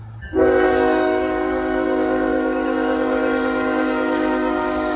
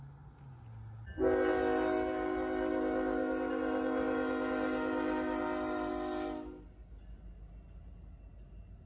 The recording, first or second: second